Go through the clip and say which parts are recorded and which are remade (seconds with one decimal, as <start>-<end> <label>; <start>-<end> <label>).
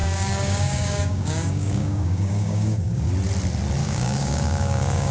0.0-3.1 remade; 3.1-3.8 recorded; 3.8-5.1 remade